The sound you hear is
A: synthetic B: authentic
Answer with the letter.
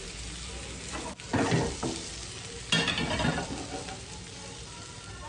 B